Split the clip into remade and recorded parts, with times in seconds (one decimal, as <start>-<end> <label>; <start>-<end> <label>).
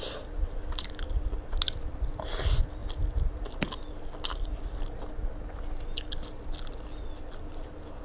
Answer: 0.0-8.0 recorded